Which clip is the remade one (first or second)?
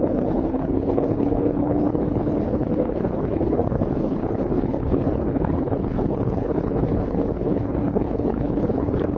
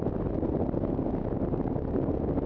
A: first